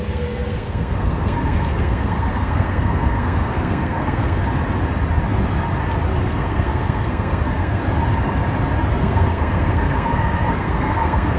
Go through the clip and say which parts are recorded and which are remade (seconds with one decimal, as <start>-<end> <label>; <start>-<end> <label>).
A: 0.0-4.4 remade; 4.4-6.2 recorded; 6.2-7.8 remade; 7.8-9.0 recorded; 9.0-11.4 remade